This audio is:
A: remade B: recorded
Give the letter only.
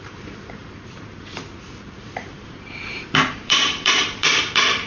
A